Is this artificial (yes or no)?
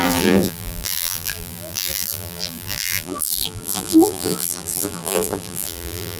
yes